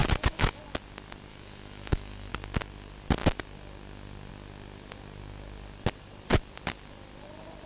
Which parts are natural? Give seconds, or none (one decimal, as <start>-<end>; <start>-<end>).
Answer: 0.6-1.3; 2.3-7.7